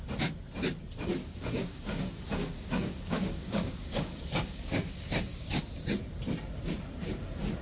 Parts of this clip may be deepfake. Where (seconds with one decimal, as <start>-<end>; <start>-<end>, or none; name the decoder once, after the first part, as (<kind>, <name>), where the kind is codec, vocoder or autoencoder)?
1.2-5.6 (codec, DAC)